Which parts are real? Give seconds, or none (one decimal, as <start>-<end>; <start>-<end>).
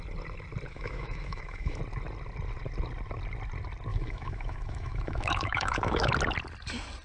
0.0-0.7; 1.8-3.9; 6.1-7.0